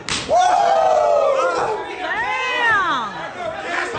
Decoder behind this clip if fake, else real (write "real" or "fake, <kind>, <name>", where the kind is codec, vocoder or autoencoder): real